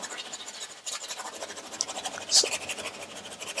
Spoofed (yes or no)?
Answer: no